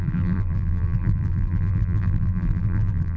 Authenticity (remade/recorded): remade